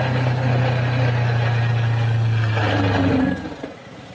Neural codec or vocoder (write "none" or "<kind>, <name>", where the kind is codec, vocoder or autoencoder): none